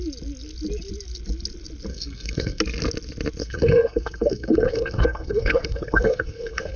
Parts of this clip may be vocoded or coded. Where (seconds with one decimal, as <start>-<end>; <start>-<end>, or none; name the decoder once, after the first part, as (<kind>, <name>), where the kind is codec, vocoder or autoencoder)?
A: 1.9-2.6 (codec, SNAC); 3.4-6.8